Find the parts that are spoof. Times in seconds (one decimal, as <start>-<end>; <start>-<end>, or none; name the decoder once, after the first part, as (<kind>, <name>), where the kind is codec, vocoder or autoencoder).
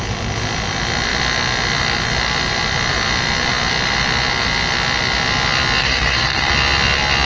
5.8-6.5 (codec, SNAC)